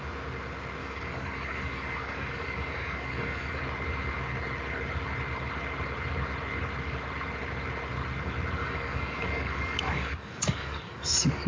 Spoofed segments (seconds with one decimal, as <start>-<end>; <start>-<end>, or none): 0.8-3.6; 8.6-11.5